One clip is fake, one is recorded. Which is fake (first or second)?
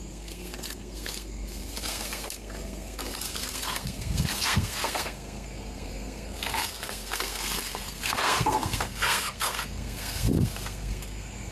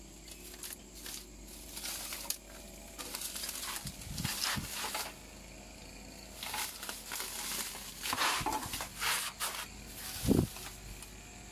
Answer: first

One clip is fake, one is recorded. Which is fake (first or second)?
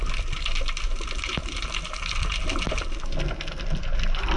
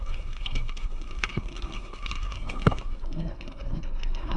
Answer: second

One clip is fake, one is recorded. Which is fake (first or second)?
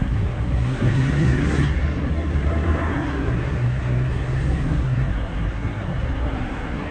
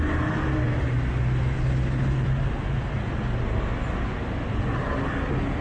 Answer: first